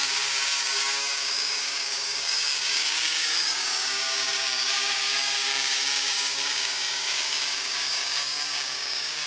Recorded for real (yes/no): no